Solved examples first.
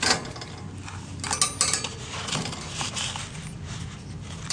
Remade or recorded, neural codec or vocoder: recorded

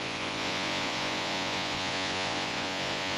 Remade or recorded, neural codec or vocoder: remade, vocoder, Vocos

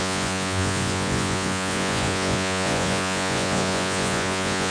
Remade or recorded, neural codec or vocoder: remade, vocoder, Vocos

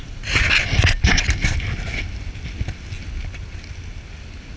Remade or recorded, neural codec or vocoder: recorded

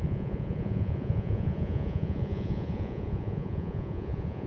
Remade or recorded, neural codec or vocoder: remade, vocoder, Vocos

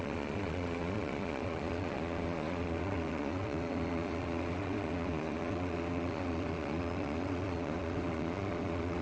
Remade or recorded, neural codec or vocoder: remade, vocoder, Vocos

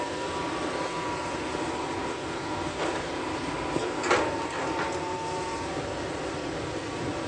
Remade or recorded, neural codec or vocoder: recorded